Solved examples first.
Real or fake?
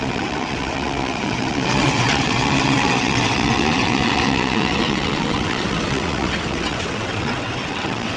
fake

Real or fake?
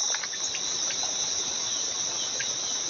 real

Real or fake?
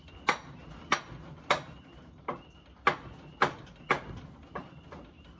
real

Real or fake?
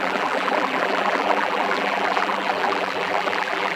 fake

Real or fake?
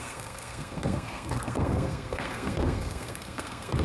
fake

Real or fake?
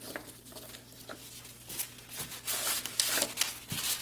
real